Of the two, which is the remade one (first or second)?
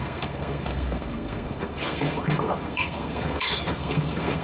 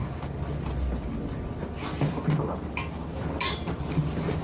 first